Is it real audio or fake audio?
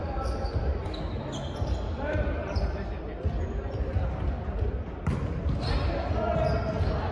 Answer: real